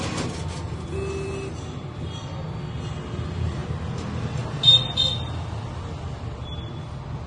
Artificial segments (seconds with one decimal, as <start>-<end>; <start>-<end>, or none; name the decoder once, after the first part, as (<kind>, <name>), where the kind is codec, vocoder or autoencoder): none